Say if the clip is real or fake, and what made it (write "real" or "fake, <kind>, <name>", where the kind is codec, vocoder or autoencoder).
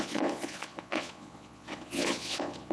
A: fake, vocoder, Vocos